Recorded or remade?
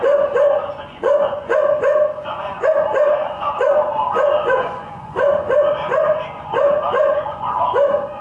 remade